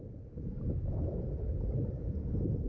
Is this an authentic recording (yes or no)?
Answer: yes